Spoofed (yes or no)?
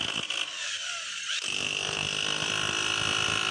no